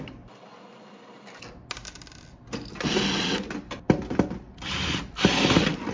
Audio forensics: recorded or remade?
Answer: recorded